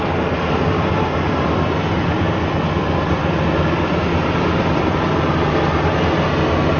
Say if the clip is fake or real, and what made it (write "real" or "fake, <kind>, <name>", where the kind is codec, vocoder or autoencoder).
real